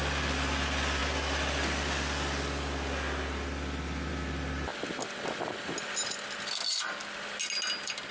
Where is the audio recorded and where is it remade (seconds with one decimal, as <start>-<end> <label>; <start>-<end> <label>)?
0.0-8.1 recorded